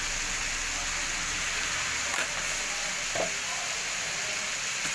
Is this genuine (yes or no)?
yes